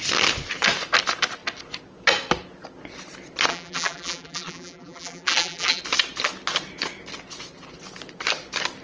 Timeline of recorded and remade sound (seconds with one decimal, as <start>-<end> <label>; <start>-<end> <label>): 0.0-3.5 recorded; 3.5-5.8 remade; 5.8-8.8 recorded